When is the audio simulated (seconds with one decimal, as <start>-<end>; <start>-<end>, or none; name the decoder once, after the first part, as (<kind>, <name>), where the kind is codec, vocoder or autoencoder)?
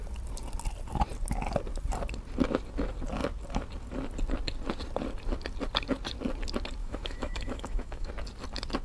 6.8-8.1 (autoencoder, DAC-VAE)